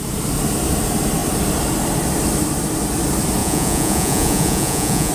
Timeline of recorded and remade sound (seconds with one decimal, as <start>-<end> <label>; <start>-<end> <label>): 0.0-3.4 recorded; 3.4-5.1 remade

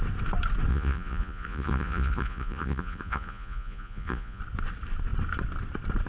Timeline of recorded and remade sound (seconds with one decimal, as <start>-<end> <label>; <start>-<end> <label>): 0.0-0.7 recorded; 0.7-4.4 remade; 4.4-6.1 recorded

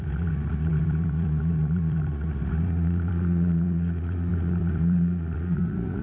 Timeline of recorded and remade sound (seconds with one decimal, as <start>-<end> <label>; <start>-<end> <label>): 0.0-6.0 remade

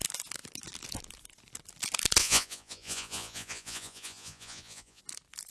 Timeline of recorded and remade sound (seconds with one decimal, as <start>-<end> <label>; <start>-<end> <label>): 0.0-2.2 recorded; 2.2-5.0 remade; 5.0-5.5 recorded

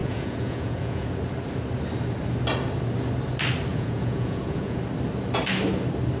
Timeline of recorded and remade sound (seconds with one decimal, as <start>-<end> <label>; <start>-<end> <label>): 0.0-1.1 remade; 1.1-3.7 recorded; 3.7-4.8 remade; 4.8-6.2 recorded

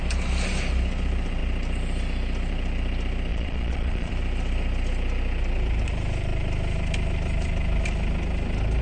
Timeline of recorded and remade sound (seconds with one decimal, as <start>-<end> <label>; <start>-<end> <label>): 0.0-3.3 recorded; 3.3-4.1 remade; 4.1-8.8 recorded

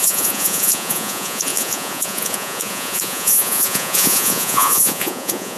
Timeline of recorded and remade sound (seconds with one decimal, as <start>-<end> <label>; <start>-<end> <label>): 0.0-5.6 remade

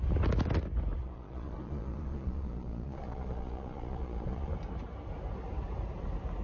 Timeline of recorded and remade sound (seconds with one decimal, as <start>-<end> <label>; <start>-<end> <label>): 0.0-1.0 recorded; 1.0-4.5 remade; 4.5-6.4 recorded